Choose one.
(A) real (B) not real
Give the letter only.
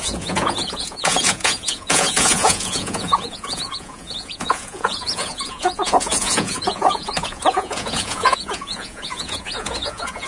B